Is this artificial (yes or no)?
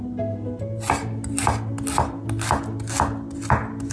no